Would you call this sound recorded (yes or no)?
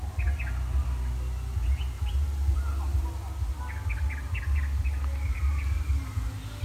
yes